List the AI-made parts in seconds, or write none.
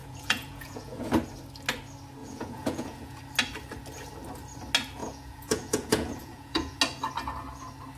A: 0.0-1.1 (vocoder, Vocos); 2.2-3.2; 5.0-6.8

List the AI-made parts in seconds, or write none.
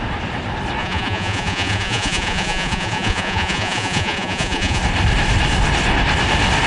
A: 0.8-4.8 (vocoder, Vocos)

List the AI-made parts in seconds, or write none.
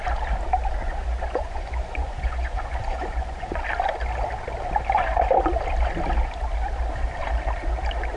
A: 0.8-3.6 (vocoder, Vocos)